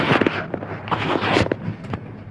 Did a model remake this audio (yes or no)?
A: no